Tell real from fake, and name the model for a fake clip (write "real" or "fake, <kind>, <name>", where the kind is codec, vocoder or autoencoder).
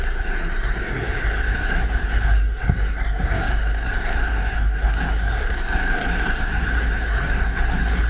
fake, codec, SNAC